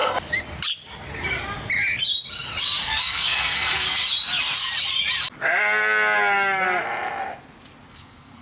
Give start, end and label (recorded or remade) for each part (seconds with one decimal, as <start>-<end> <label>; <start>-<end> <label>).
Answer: 0.0-3.0 recorded; 3.0-4.0 remade; 4.0-7.9 recorded; 7.9-8.4 remade